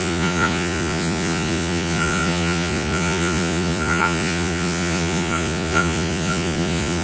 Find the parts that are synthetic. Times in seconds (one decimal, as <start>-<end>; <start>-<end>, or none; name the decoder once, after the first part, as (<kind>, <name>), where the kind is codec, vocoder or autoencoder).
0.0-7.0 (vocoder, Vocos)